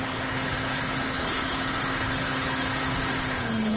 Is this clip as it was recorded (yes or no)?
no